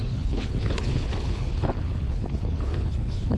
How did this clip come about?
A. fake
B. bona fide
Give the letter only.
A